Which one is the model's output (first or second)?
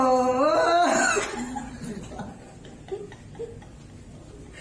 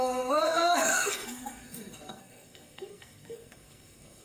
second